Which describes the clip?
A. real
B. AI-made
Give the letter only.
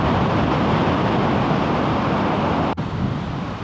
A